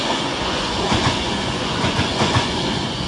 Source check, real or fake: fake